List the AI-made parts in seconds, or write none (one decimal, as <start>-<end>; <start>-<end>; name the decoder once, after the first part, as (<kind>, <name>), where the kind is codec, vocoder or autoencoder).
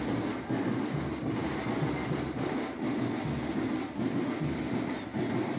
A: none